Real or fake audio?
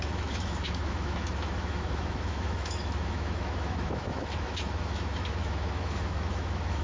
fake